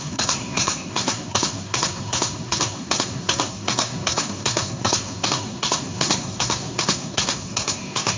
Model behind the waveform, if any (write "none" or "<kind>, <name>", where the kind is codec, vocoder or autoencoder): codec, SNAC